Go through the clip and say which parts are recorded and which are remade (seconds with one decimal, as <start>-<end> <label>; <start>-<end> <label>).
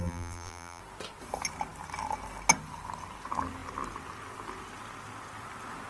0.0-0.8 remade; 0.8-5.9 recorded